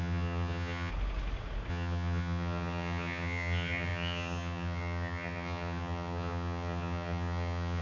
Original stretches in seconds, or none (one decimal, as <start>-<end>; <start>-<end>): 0.9-1.7